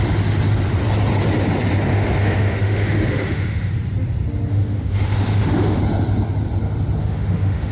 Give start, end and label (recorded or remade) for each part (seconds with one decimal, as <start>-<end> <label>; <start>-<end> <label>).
0.0-1.9 recorded; 1.9-3.7 remade; 3.7-4.5 recorded; 4.5-5.8 remade; 5.8-7.0 recorded; 7.0-7.7 remade